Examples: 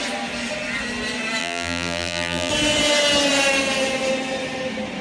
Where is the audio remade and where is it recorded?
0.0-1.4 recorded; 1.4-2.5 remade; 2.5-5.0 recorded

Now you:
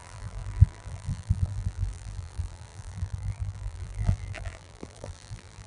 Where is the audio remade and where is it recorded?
0.0-5.7 remade

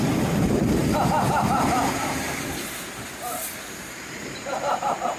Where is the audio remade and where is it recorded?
0.0-5.2 recorded

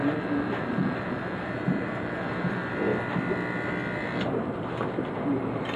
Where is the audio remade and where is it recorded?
0.0-2.9 remade; 2.9-4.4 recorded; 4.4-5.8 remade

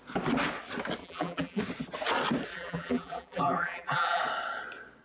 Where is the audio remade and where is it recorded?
0.0-1.0 recorded; 1.0-1.6 remade; 1.6-2.5 recorded; 2.5-4.2 remade; 4.2-5.0 recorded

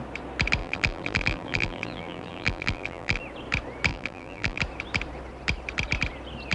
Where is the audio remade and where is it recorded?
0.0-0.6 recorded; 0.6-3.2 remade; 3.2-3.9 recorded; 3.9-4.6 remade; 4.6-6.5 recorded

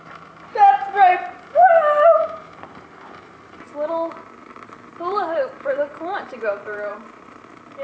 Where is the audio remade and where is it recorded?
0.0-7.8 remade

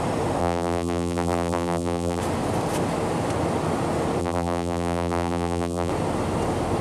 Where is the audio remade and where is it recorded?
0.0-0.4 recorded; 0.4-2.2 remade; 2.2-4.2 recorded; 4.2-5.9 remade; 5.9-6.8 recorded